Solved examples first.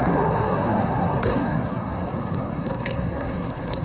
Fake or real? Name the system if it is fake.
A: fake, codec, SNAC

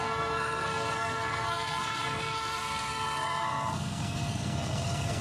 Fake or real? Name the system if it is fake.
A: fake, codec, SNAC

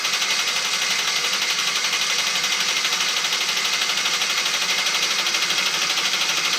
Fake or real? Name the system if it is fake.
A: real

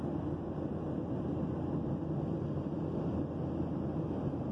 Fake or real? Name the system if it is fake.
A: real